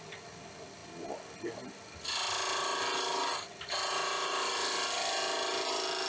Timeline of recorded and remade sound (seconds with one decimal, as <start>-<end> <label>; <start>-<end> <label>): 0.0-6.1 recorded